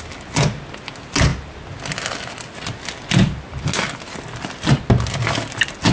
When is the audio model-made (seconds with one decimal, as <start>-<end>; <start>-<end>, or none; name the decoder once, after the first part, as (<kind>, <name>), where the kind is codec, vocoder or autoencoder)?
none